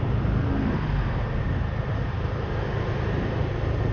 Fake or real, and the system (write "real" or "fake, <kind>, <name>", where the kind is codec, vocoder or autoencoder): real